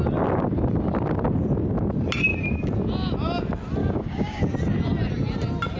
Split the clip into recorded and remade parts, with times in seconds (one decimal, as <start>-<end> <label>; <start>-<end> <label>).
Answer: 0.0-3.8 recorded; 3.8-4.4 remade; 4.4-5.8 recorded